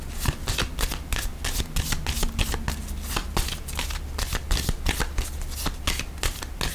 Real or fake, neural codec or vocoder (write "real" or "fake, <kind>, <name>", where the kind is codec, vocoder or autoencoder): real